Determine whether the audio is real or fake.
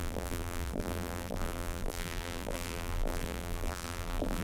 fake